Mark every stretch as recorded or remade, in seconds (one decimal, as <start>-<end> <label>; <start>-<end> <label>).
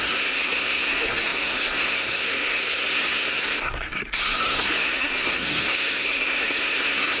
0.0-7.2 remade